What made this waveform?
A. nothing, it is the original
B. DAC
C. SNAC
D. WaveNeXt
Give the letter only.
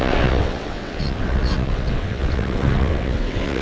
D